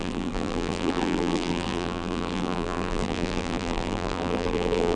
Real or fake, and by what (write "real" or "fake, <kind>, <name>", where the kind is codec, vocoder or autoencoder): fake, vocoder, BigVGAN v2